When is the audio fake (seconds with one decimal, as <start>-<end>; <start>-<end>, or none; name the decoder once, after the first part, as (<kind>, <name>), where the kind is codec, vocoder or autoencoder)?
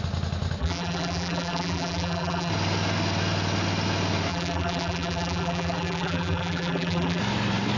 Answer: 0.6-2.5 (vocoder, BigVGAN v2); 4.3-7.2